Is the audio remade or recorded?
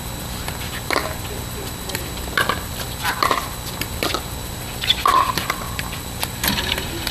remade